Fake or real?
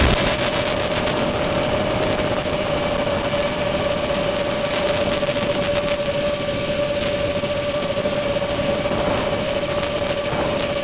real